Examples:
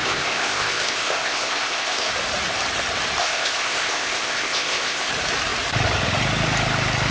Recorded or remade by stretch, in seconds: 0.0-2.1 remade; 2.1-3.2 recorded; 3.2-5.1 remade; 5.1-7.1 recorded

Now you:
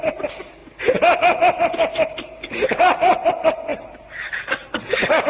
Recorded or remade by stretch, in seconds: 0.0-5.3 recorded

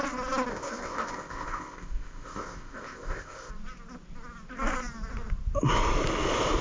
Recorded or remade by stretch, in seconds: 0.0-0.5 recorded; 0.5-3.5 remade; 3.5-6.6 recorded

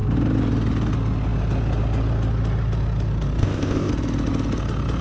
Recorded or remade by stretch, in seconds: 0.0-3.4 recorded; 3.4-3.9 remade; 3.9-5.0 recorded

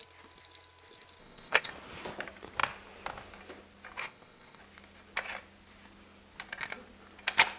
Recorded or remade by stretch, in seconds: 0.0-1.2 recorded; 1.2-1.7 remade; 1.7-4.0 recorded; 4.0-4.6 remade; 4.6-7.6 recorded

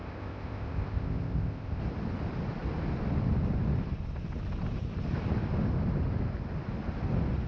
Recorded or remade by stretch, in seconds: 0.0-1.8 remade; 1.8-7.5 recorded

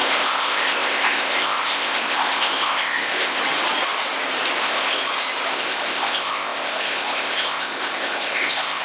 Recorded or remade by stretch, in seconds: 0.0-3.4 remade; 3.4-4.6 recorded; 4.6-5.0 remade; 5.0-5.5 recorded; 5.5-8.8 remade